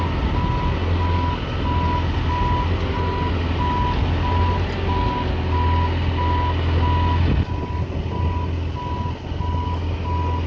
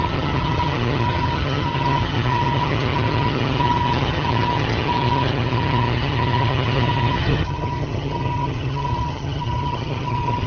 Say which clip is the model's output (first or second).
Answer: second